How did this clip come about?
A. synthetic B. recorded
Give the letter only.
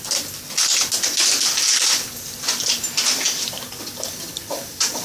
B